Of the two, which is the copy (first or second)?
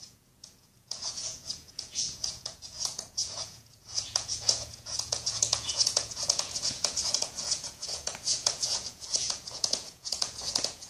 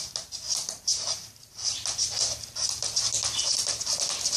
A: first